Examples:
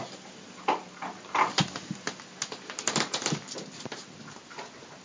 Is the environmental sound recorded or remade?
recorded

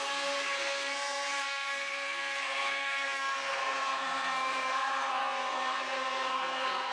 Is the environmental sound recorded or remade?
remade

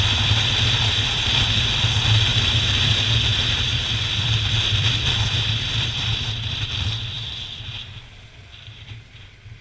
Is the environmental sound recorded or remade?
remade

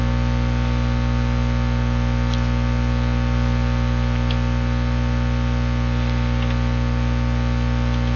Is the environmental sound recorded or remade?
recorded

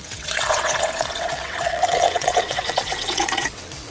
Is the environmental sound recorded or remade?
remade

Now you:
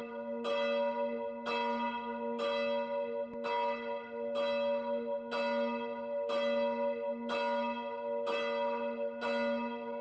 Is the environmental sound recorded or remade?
recorded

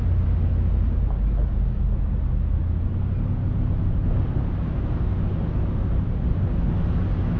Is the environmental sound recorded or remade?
recorded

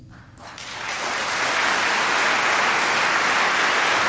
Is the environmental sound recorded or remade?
recorded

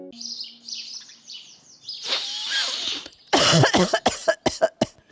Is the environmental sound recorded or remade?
recorded